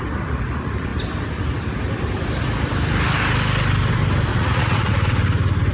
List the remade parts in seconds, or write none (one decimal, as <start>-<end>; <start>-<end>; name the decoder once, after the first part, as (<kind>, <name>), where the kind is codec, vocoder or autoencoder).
4.3-4.9 (vocoder, Vocos)